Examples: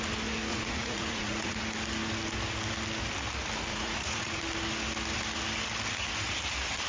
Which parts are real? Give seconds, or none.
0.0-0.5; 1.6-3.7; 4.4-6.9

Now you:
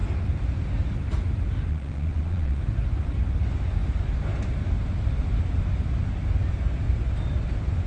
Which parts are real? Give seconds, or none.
0.0-1.7; 2.6-7.9

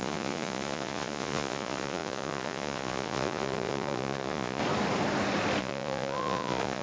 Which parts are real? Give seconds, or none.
4.6-5.6

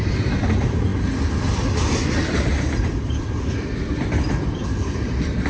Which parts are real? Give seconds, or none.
none

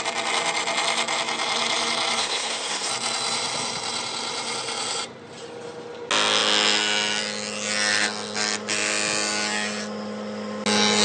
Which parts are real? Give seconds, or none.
0.0-2.2; 2.9-11.0